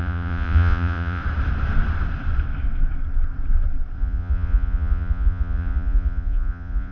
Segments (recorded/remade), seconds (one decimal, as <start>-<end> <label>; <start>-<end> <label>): 0.0-1.2 remade; 1.2-4.0 recorded; 4.0-6.9 remade